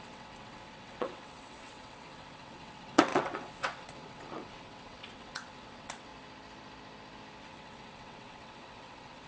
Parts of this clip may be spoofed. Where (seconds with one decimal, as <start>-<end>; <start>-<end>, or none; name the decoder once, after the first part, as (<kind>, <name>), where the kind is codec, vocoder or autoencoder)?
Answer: 0.0-6.1 (vocoder, WaveNeXt); 7.4-9.3